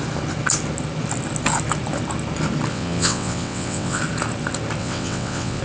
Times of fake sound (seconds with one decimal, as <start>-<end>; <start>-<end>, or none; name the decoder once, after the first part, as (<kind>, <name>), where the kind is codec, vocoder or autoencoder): 2.7-4.0 (vocoder, WaveNeXt); 4.8-5.6